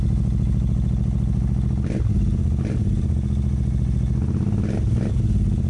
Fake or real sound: real